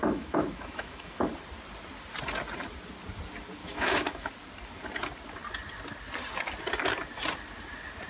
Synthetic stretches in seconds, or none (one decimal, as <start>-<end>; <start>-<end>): 0.0-1.3; 3.6-4.3